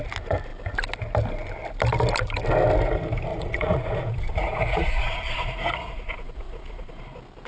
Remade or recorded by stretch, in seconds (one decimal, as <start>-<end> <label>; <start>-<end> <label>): 0.0-3.3 recorded; 3.3-7.0 remade; 7.0-7.5 recorded